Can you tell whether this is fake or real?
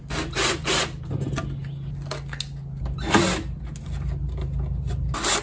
real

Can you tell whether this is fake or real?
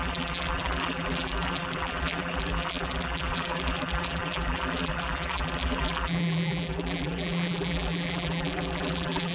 fake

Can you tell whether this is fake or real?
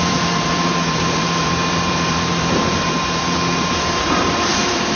fake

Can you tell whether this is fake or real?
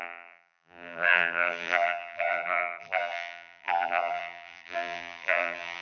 fake